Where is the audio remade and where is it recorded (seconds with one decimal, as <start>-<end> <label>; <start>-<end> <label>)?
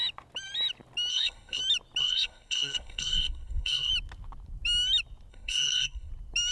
0.0-1.1 recorded; 1.1-1.6 remade; 1.6-2.0 recorded; 2.0-3.9 remade; 3.9-5.3 recorded; 5.3-6.1 remade; 6.1-6.5 recorded